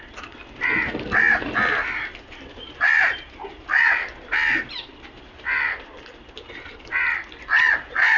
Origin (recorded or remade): recorded